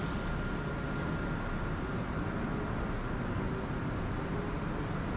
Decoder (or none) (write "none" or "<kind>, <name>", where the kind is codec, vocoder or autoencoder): none